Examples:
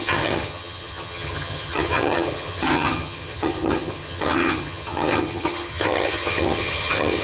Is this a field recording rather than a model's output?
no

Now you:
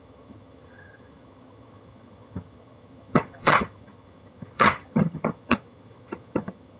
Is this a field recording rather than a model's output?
no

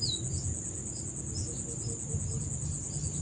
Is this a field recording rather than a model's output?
yes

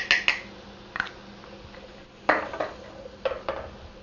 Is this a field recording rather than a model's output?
yes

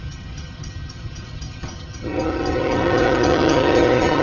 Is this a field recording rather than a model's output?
no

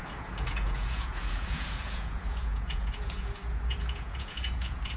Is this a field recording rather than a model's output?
no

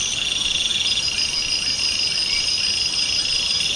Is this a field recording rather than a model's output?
yes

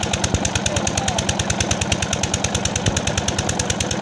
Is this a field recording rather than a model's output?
yes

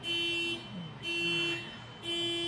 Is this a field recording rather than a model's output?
yes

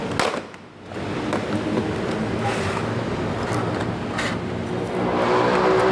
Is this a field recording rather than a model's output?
yes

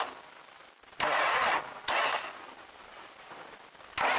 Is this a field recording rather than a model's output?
yes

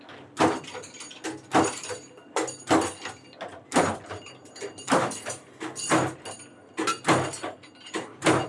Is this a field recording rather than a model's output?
yes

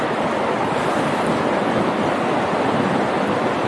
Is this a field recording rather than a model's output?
yes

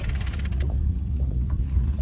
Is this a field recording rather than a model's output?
no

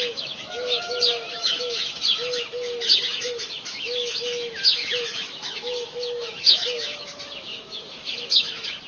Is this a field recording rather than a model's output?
no